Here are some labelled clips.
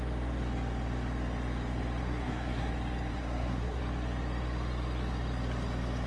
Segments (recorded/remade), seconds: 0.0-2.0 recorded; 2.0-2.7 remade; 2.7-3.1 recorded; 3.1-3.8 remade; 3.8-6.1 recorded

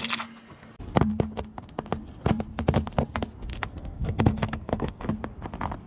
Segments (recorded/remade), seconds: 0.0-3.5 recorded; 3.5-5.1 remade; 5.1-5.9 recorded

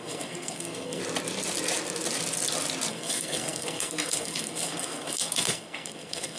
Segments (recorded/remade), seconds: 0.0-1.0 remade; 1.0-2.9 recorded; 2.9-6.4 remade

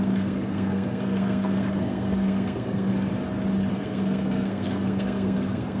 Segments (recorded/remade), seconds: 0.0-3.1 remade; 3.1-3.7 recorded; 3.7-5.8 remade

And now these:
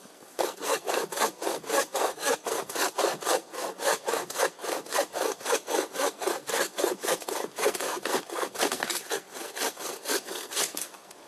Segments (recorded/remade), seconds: 0.0-11.3 remade

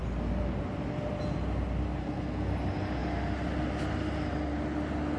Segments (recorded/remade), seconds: 0.0-2.0 recorded; 2.0-2.5 remade; 2.5-5.2 recorded

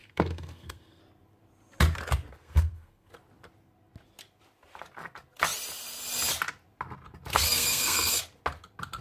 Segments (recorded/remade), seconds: 0.0-1.0 remade; 1.0-2.4 recorded; 2.4-3.1 remade; 3.1-7.3 recorded; 7.3-8.2 remade; 8.2-9.0 recorded

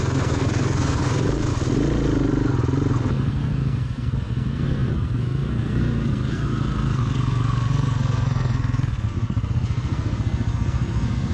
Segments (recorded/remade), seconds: 0.0-1.5 remade; 1.5-2.9 recorded; 2.9-11.3 remade